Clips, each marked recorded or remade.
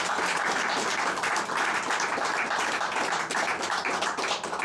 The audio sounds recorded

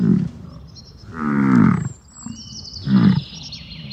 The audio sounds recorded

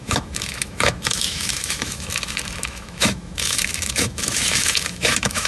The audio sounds remade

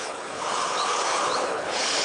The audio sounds remade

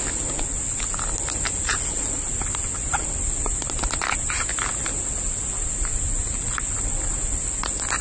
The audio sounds recorded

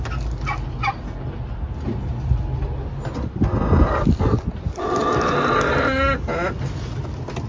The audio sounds recorded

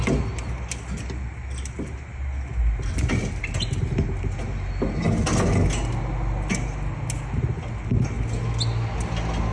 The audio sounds recorded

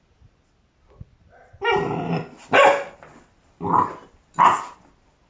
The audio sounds recorded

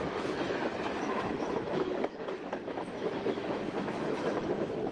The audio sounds remade